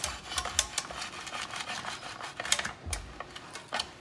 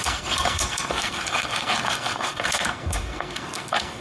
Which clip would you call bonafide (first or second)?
first